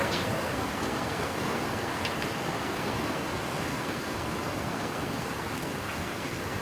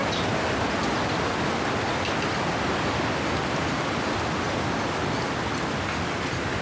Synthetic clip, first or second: first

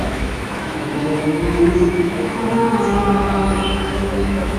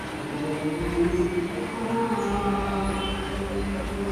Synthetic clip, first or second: first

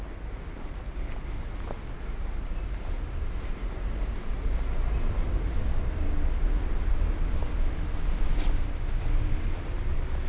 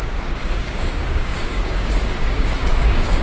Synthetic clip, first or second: second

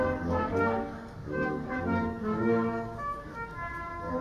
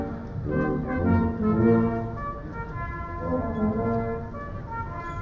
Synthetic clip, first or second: first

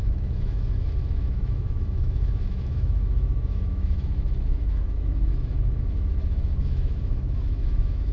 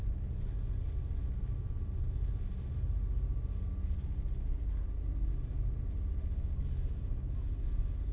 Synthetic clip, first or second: first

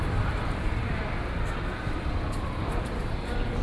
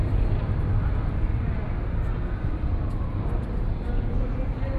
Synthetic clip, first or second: first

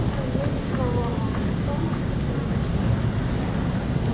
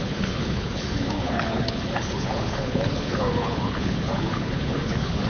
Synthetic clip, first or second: second